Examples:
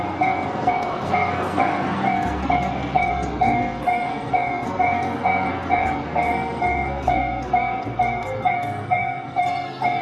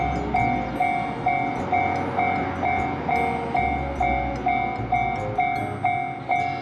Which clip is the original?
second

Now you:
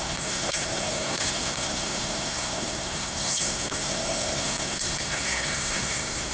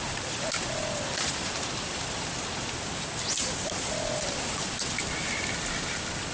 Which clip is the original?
second